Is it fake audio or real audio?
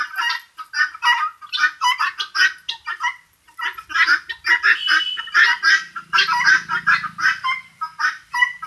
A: real